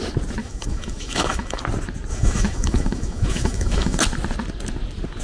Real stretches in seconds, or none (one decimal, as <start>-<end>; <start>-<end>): 0.0-0.4; 1.6-2.1; 4.0-5.2